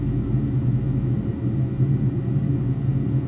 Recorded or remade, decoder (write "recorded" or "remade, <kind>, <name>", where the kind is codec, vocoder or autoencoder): recorded